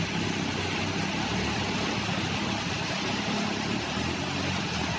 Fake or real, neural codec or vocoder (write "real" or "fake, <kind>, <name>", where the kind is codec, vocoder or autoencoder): real